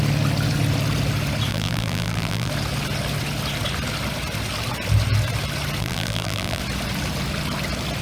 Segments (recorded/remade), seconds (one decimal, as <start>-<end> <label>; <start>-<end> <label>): 0.0-1.5 recorded; 1.5-2.5 remade; 2.5-5.8 recorded; 5.8-6.6 remade; 6.6-8.0 recorded